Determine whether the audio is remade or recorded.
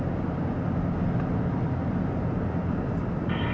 recorded